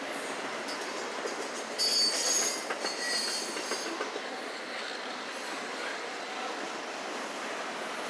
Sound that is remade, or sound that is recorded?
recorded